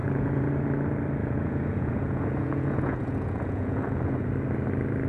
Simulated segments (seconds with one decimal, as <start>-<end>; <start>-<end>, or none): 0.0-0.5; 1.2-4.3